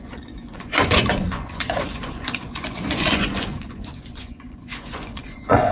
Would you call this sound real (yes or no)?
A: no